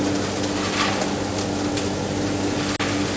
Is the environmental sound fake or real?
real